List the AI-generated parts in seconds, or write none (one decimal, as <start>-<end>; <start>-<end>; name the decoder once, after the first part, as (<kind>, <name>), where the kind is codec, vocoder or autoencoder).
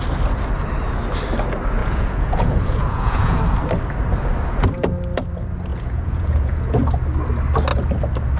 1.8-3.4 (vocoder, Vocos); 5.7-6.8